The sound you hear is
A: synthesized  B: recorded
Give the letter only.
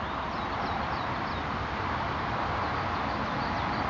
B